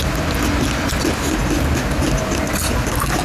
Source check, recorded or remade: recorded